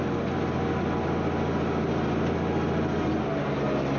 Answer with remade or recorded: recorded